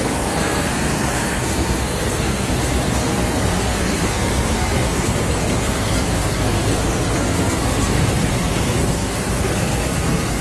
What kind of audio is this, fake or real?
fake